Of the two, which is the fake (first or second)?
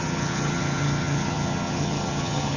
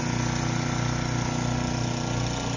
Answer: first